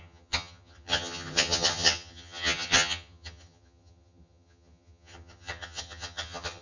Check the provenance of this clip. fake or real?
fake